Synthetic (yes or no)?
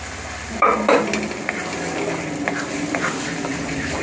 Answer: no